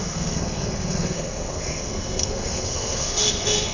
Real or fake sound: fake